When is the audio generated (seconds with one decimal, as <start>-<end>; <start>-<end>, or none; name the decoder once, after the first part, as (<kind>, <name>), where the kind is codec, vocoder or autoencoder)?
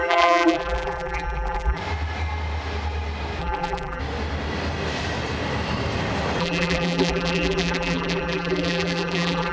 0.0-1.8 (vocoder, BigVGAN v2); 3.4-4.0; 6.4-9.5